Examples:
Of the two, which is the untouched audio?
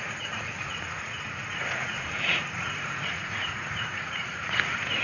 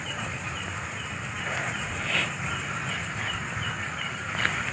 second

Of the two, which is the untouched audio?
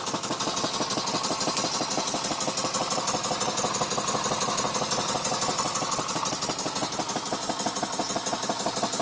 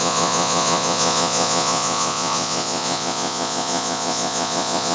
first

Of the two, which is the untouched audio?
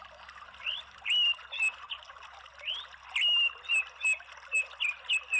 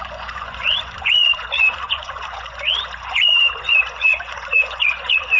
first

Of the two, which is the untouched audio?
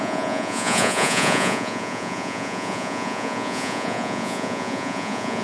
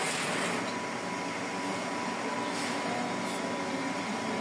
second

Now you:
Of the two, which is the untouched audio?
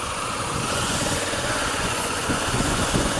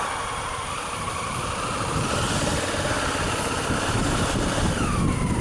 second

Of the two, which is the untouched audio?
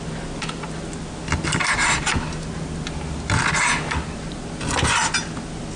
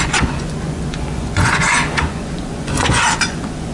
first